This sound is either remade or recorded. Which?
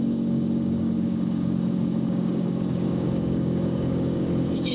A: remade